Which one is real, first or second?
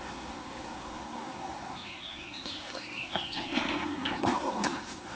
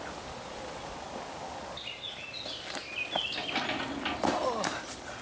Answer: second